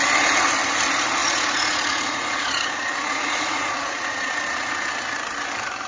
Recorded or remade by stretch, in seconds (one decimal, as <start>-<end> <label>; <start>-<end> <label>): 0.0-1.2 recorded; 1.2-4.7 remade; 4.7-5.9 recorded